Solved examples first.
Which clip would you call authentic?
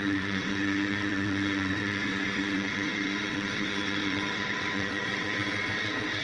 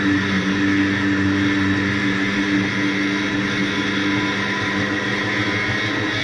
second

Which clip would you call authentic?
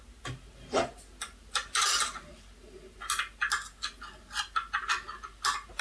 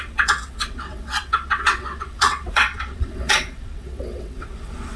first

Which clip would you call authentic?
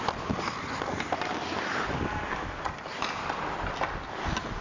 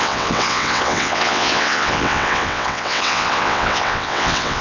first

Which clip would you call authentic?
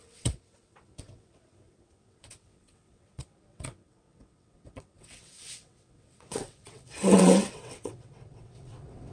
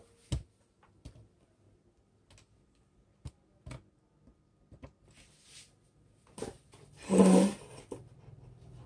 second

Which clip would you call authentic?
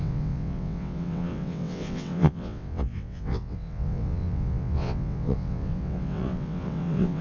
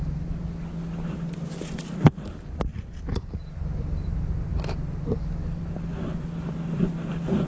second